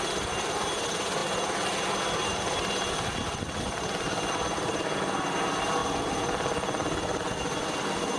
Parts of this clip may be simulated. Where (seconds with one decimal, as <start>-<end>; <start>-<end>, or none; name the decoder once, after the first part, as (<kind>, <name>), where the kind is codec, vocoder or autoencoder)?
none